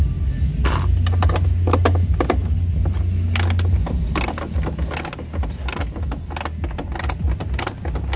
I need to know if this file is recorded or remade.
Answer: recorded